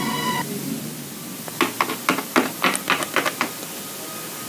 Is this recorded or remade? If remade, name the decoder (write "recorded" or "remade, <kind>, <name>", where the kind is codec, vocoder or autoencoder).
recorded